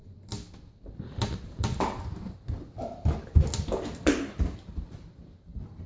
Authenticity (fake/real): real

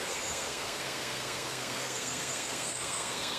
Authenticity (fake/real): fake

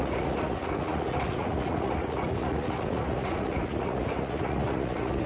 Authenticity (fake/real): fake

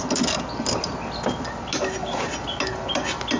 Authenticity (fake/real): real